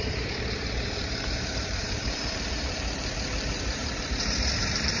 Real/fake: fake